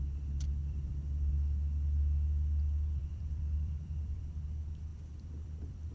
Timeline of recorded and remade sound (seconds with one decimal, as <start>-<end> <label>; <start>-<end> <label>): 0.0-0.6 recorded; 0.6-1.3 remade; 1.3-3.0 recorded; 3.0-4.2 remade; 4.2-4.9 recorded; 4.9-5.9 remade